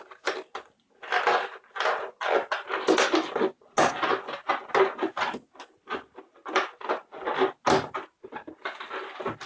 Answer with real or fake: real